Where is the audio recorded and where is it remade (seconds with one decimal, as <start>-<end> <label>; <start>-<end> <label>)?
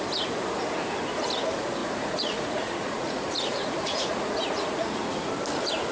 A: 0.0-1.8 recorded; 1.8-5.3 remade; 5.3-5.9 recorded